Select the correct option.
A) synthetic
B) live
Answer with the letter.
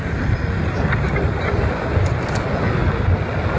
B